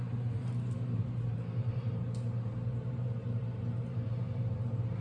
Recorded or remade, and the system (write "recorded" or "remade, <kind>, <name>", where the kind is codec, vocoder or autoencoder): remade, vocoder, BigVGAN v2